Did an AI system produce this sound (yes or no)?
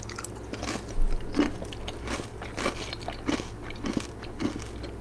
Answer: no